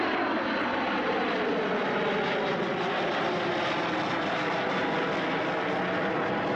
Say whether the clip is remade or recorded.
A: recorded